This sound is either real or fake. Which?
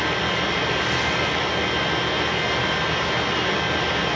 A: real